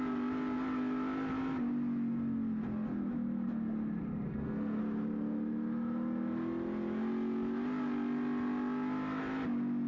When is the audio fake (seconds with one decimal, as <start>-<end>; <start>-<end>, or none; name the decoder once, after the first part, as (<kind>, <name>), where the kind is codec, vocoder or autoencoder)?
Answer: 4.3-4.8 (codec, SNAC)